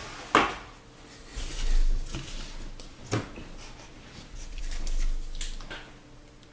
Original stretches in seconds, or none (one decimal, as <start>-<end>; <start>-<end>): 0.0-6.5